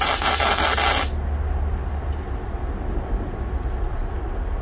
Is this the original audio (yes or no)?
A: yes